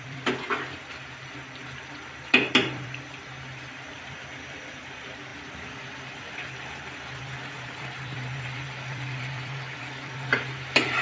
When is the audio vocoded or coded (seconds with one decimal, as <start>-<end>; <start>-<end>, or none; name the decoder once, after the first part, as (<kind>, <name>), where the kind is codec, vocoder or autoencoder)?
0.0-11.0 (vocoder, BigVGAN v2)